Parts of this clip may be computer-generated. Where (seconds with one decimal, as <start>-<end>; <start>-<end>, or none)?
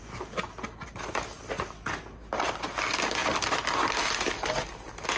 none